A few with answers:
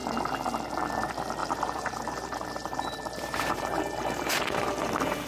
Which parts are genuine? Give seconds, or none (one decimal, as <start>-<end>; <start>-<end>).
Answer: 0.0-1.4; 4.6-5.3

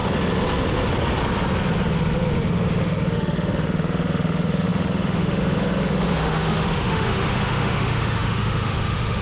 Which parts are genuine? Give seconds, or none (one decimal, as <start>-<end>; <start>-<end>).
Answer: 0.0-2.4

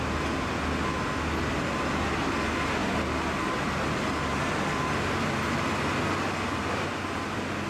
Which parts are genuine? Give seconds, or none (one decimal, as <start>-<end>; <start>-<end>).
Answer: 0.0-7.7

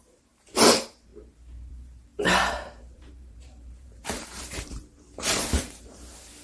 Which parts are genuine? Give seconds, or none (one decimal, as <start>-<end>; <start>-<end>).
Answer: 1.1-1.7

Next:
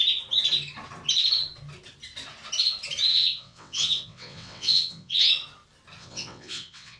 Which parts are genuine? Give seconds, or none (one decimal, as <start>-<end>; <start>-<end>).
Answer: 0.0-3.1; 5.3-6.0

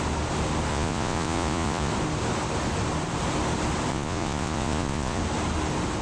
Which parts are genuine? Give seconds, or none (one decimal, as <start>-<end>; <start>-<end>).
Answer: 0.0-0.7; 1.9-3.9; 5.2-6.0